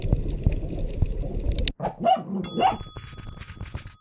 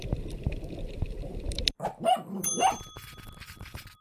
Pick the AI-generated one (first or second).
second